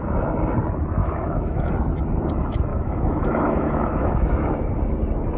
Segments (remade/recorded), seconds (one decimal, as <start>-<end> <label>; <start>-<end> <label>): 0.0-1.0 recorded; 1.0-1.7 remade; 1.7-2.7 recorded; 2.7-4.8 remade; 4.8-5.4 recorded